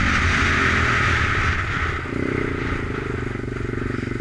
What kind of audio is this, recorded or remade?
recorded